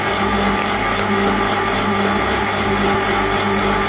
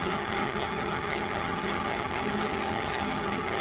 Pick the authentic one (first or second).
first